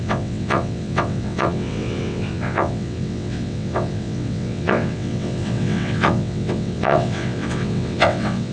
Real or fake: fake